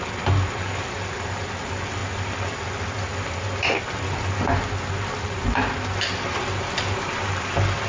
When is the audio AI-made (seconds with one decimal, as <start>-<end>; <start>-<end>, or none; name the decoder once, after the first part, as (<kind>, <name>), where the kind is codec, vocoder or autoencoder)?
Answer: none